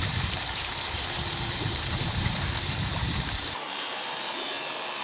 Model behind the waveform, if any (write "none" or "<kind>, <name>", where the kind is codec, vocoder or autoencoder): vocoder, BigVGAN v2